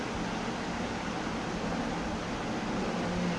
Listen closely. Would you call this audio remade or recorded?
recorded